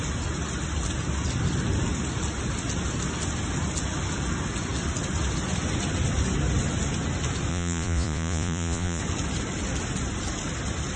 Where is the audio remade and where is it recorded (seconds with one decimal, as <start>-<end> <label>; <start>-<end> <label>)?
0.0-7.5 recorded; 7.5-9.0 remade; 9.0-11.0 recorded